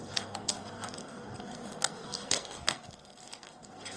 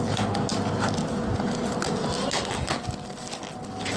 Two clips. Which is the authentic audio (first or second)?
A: second